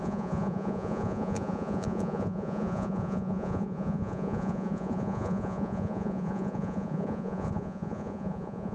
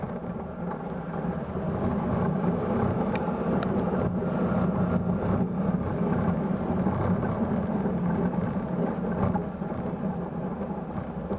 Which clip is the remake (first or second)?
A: first